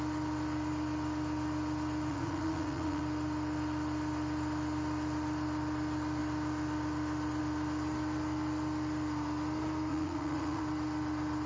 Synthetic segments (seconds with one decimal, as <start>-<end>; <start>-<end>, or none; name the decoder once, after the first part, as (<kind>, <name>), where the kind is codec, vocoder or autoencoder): 2.1-3.0 (vocoder, Vocos); 9.9-10.6